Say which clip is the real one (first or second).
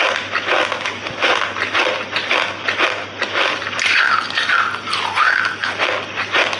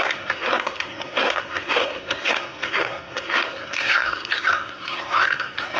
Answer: first